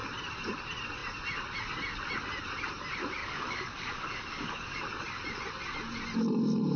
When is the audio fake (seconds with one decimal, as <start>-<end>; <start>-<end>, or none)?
3.2-4.8